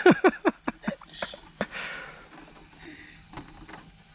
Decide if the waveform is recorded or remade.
recorded